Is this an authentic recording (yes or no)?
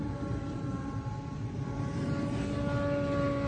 yes